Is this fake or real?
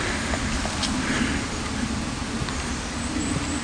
real